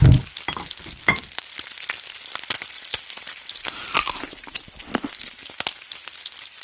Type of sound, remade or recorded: recorded